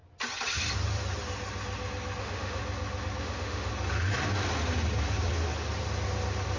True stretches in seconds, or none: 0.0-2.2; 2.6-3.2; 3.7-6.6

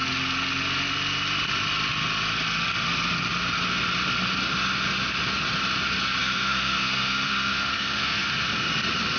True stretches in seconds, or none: 0.0-6.2; 8.3-9.2

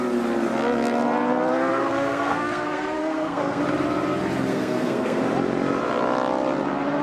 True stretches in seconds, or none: 0.0-1.7; 3.6-4.5; 5.2-7.0

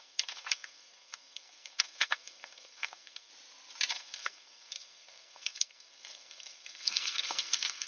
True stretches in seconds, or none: 3.3-3.9